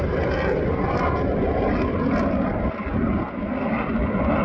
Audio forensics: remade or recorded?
recorded